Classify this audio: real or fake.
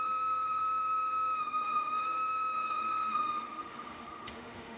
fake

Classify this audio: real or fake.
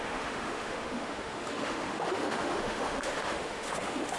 fake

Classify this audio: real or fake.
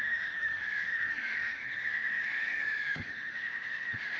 fake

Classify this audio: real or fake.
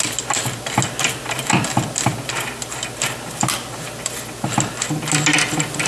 real